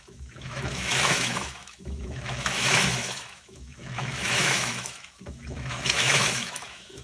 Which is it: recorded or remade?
remade